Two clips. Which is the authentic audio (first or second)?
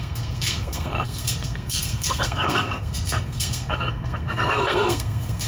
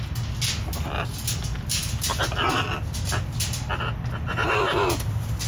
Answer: second